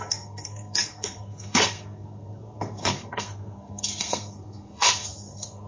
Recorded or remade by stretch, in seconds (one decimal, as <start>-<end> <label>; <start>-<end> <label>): 0.0-5.7 remade